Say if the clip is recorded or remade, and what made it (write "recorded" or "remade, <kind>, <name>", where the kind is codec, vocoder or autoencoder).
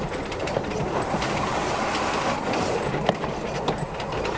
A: recorded